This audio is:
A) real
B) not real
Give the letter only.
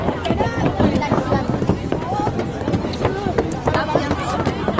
A